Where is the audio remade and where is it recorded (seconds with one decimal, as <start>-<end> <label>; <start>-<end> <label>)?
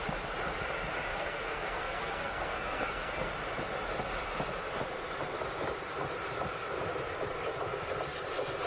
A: 0.0-1.1 recorded; 1.1-3.3 remade; 3.3-8.7 recorded